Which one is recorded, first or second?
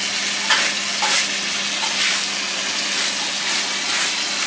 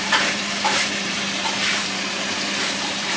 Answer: first